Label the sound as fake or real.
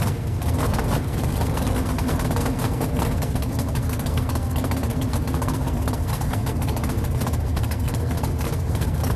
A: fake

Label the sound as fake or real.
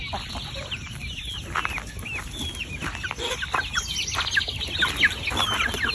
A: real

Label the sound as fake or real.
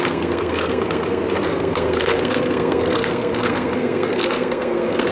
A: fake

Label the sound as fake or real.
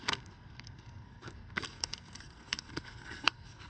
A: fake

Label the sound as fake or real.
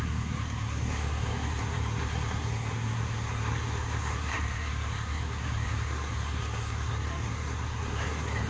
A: fake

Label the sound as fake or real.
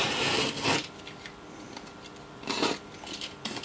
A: real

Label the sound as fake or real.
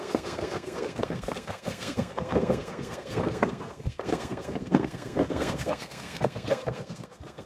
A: fake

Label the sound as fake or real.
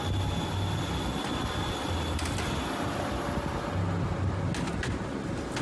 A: real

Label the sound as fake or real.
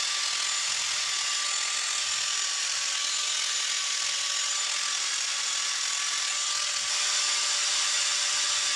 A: real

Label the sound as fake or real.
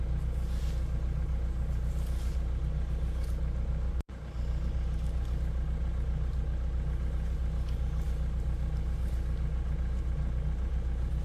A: real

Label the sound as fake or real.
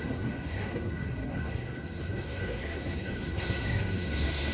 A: fake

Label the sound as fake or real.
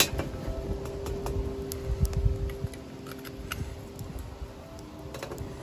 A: real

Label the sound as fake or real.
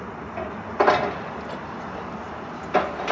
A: real